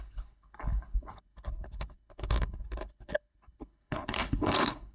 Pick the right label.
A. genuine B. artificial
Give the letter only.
B